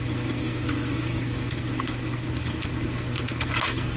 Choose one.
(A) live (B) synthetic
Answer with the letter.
B